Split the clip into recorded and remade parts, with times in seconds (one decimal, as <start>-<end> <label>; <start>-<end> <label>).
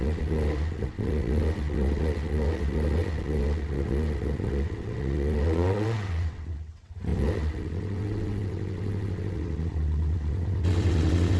0.0-11.4 remade